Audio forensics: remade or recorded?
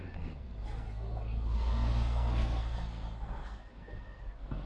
remade